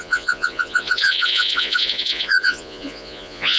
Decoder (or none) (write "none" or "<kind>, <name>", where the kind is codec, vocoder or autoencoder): vocoder, Vocos